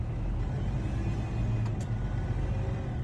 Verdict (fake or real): real